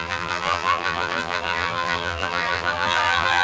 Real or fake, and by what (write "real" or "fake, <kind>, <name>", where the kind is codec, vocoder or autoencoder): fake, vocoder, BigVGAN v2